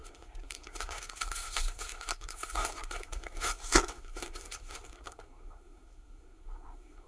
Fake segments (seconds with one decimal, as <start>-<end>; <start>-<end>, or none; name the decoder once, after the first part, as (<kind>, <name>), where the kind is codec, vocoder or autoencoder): 0.0-7.1 (codec, SNAC)

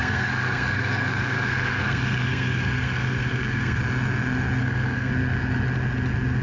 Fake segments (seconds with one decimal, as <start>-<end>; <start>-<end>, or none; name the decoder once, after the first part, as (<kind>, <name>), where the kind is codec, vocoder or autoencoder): 0.0-3.8 (codec, SNAC); 4.6-5.1

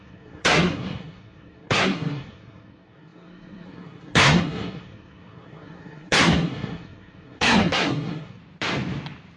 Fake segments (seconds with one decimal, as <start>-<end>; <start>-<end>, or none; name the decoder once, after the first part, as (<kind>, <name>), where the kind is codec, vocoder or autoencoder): 0.0-8.4 (codec, SNAC)

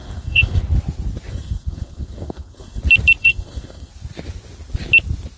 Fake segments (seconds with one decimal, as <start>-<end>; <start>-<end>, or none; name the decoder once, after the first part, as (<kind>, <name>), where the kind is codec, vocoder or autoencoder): 0.0-0.6 (codec, SNAC); 1.3-2.8; 3.2-3.9